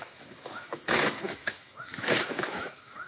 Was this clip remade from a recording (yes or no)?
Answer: yes